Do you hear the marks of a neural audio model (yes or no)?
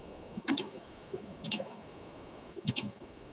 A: yes